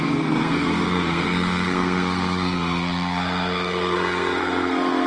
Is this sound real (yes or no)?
no